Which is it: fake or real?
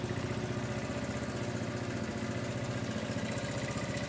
real